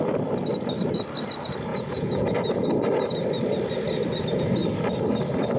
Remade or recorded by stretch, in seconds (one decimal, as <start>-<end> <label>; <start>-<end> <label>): 0.0-1.7 recorded; 1.7-2.3 remade; 2.3-5.6 recorded